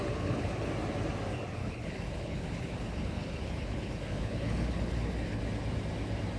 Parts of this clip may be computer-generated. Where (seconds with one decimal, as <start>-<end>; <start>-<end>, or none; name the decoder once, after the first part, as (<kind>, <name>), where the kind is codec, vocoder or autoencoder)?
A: 0.0-0.7 (codec, HILCodec); 1.6-5.4